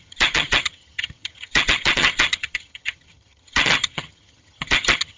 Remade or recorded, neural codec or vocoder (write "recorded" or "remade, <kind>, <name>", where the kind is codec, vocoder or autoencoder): remade, vocoder, HiFi-GAN